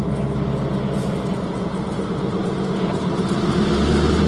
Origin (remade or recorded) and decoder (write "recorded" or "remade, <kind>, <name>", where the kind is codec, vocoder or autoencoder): recorded